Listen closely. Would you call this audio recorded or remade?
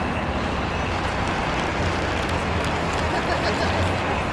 recorded